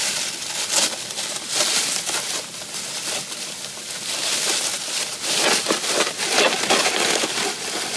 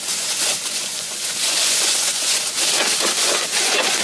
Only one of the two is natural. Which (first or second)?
first